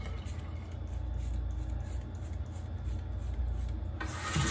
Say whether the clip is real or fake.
real